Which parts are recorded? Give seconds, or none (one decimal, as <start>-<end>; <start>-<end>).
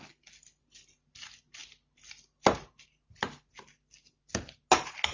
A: 0.0-5.1